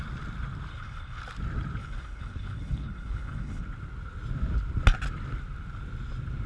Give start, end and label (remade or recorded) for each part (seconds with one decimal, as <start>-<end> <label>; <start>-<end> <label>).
0.0-0.7 recorded; 0.7-1.2 remade; 1.2-1.8 recorded; 1.8-3.6 remade; 3.6-6.5 recorded